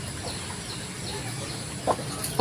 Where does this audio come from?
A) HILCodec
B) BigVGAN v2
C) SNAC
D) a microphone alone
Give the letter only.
D